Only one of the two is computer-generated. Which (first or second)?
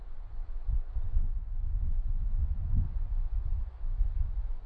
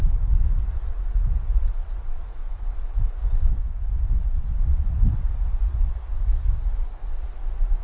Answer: first